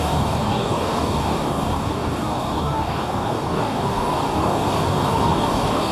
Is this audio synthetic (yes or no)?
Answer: yes